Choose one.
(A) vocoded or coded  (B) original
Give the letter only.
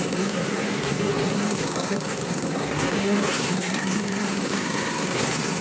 A